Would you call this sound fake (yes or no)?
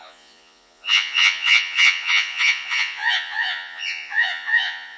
yes